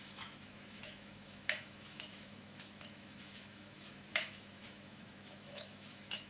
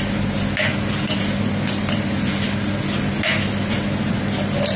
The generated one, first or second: first